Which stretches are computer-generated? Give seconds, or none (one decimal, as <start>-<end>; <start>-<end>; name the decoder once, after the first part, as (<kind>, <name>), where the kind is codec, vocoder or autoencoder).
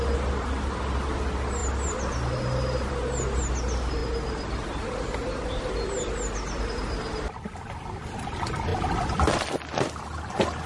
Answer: none